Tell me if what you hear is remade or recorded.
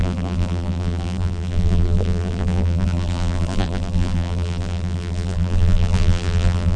remade